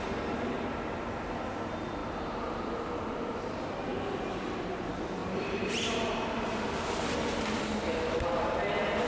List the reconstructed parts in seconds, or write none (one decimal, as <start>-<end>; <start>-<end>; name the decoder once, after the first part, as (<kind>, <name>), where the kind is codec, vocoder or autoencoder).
2.0-3.1 (vocoder, BigVGAN v2); 5.2-7.1